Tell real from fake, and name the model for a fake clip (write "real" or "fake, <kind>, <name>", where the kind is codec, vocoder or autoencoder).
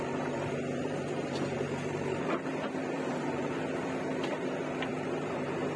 fake, vocoder, BigVGAN v2